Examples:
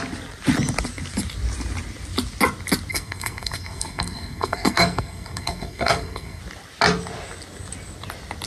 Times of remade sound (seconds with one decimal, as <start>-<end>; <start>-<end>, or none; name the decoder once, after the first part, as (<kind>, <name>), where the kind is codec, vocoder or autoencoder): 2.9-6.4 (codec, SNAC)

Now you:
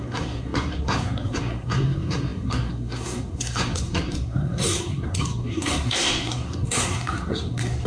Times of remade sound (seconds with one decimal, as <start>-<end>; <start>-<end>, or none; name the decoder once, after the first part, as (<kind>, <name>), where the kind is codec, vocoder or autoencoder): 0.0-7.9 (codec, SNAC)

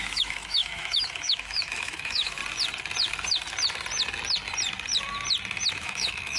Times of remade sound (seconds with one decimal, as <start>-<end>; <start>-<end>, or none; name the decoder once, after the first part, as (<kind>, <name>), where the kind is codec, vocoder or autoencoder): 0.0-2.4 (autoencoder, DAC-VAE); 5.7-6.4

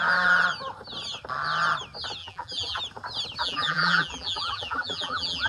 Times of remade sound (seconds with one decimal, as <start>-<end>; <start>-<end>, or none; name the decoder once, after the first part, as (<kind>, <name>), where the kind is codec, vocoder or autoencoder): 2.2-2.8 (vocoder, BigVGAN v2); 3.4-5.5